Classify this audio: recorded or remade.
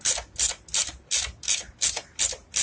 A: recorded